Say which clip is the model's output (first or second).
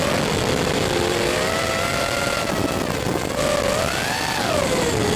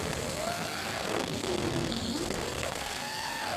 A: second